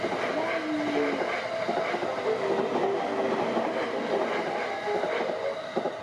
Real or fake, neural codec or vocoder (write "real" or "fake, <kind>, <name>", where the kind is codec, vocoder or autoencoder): real